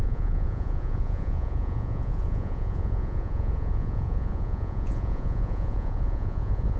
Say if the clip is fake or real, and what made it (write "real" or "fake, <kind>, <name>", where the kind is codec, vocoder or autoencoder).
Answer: fake, vocoder, Vocos